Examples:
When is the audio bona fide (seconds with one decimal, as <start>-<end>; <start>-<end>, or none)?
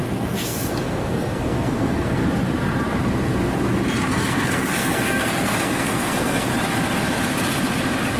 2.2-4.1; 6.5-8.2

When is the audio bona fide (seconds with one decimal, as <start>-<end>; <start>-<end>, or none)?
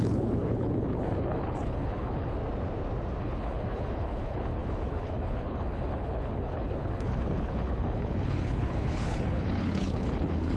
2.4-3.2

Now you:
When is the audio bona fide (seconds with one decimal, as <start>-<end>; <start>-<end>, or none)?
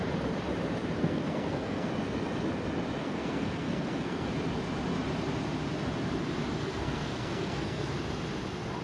0.0-1.0; 1.9-3.0; 4.3-6.6; 7.9-8.8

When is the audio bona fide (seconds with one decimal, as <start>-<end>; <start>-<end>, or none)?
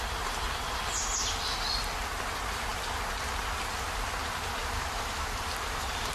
0.0-4.6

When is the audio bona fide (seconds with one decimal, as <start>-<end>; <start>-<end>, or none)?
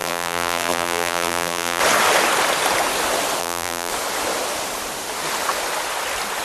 1.8-3.4; 3.9-6.4